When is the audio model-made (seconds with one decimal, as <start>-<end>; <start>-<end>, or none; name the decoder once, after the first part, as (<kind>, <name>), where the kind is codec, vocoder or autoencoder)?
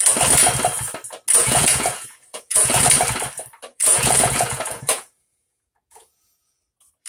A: 1.4-2.8 (vocoder, Vocos); 3.7-6.6